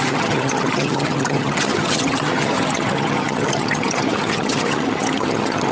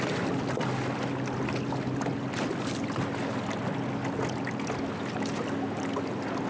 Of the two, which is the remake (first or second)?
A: first